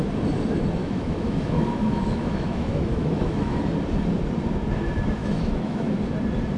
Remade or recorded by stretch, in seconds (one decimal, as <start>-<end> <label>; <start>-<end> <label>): 0.0-0.8 recorded; 0.8-3.6 remade; 3.6-5.2 recorded; 5.2-6.0 remade; 6.0-6.6 recorded